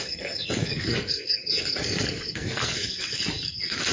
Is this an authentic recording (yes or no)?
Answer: no